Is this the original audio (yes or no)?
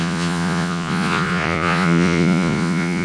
no